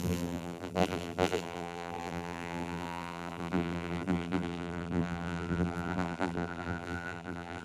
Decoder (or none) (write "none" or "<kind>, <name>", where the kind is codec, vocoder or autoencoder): vocoder, BigVGAN v2